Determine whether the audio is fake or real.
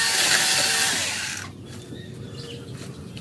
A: real